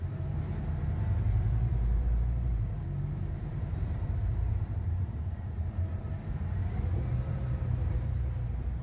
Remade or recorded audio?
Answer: remade